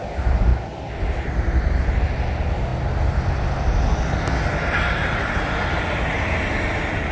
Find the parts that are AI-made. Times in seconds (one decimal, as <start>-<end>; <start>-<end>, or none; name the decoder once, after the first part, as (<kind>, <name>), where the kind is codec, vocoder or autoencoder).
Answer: none